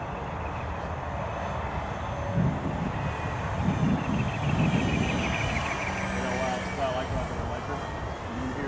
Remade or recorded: recorded